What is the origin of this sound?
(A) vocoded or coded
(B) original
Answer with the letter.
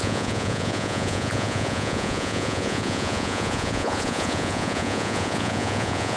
A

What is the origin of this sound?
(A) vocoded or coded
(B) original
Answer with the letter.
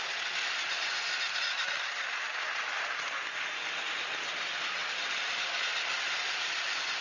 B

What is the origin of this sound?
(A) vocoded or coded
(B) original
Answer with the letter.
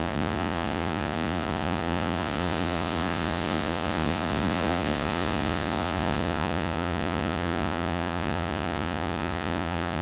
A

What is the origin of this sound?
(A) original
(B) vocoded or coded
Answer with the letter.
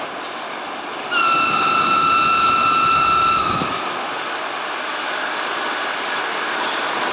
A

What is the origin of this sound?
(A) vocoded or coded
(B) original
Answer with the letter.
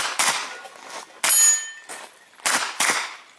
B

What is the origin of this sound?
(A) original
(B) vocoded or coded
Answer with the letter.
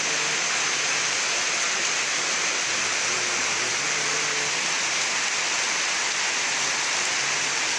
A